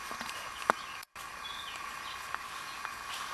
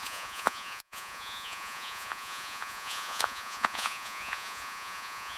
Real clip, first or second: first